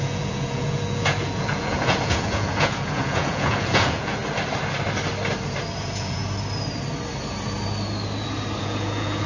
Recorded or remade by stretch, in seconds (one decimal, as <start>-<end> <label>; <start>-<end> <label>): 0.0-4.2 remade; 4.2-5.8 recorded; 5.8-6.2 remade; 6.2-8.6 recorded; 8.6-9.3 remade